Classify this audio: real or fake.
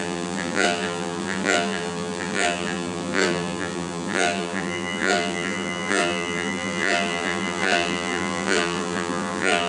fake